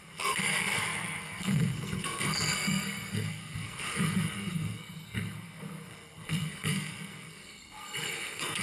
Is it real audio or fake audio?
fake